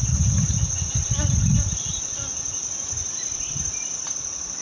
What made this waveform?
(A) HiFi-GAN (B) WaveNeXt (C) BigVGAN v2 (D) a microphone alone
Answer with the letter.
D